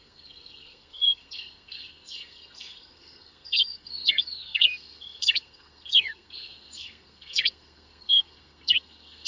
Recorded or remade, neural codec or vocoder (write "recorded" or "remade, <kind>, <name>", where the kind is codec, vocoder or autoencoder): remade, codec, SNAC